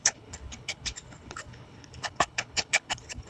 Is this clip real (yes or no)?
no